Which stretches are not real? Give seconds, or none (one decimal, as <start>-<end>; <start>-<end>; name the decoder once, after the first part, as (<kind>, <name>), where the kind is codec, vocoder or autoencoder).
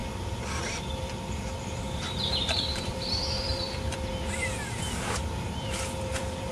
0.5-6.5 (vocoder, BigVGAN v2)